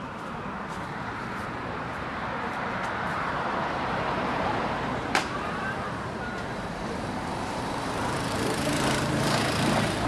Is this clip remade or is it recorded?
remade